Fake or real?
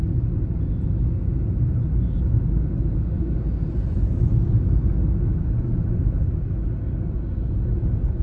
real